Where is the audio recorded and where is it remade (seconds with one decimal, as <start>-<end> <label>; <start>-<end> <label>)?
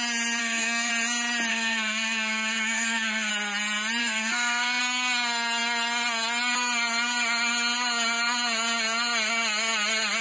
0.0-0.4 recorded; 0.4-0.9 remade; 0.9-1.5 recorded; 1.5-3.3 remade; 3.3-4.0 recorded; 4.0-4.8 remade; 4.8-10.2 recorded